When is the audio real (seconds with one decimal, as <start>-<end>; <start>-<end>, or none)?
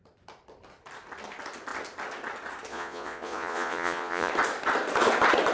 0.0-2.7; 4.3-5.5